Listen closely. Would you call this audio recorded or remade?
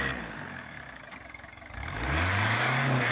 remade